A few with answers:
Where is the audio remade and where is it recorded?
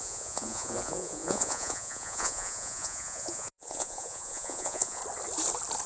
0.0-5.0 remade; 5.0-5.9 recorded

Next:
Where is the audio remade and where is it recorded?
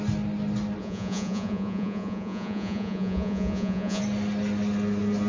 0.0-0.8 recorded; 0.8-4.0 remade; 4.0-5.3 recorded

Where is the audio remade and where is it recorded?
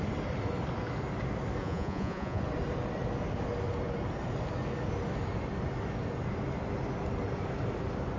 0.0-1.6 recorded; 1.6-2.4 remade; 2.4-8.2 recorded